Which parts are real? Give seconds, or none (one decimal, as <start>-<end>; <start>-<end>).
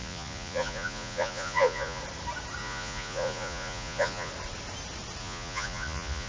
2.0-2.6; 4.3-5.2